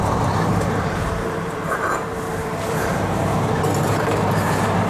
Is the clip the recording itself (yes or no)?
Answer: no